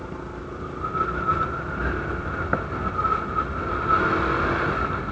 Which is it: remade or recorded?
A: recorded